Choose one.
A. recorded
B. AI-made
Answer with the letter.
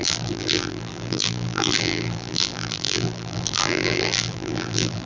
B